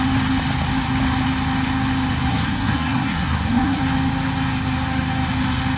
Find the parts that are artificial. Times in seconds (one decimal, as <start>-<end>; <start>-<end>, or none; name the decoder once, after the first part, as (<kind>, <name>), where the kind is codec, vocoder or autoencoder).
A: 2.3-3.8 (codec, SNAC)